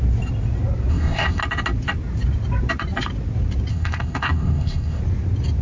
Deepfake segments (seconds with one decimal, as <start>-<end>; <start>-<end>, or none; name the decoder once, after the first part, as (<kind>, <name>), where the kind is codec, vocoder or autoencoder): 0.9-1.4 (codec, ZipCodec); 3.7-5.0